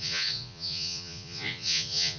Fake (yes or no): yes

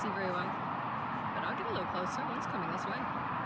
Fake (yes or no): no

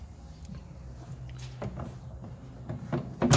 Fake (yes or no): no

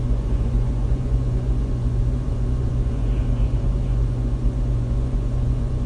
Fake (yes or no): yes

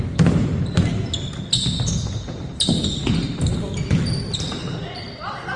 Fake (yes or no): no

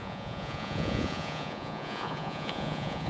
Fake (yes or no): yes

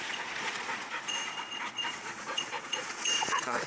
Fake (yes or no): yes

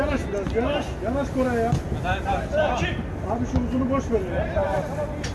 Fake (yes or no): no